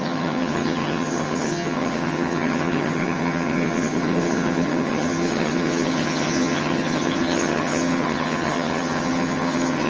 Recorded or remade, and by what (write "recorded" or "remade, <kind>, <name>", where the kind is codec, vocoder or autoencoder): remade, vocoder, HiFi-GAN